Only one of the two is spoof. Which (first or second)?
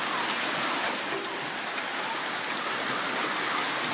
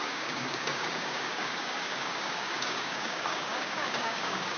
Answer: second